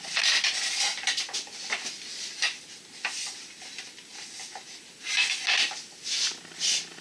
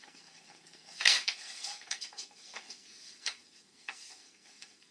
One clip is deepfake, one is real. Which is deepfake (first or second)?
second